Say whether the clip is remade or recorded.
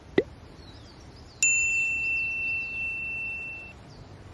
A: recorded